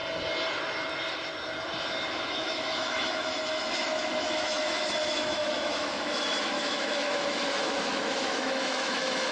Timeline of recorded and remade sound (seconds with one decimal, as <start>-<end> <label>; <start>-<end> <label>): 0.0-2.1 recorded; 2.1-9.3 remade